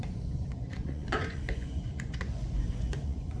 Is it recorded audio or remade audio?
remade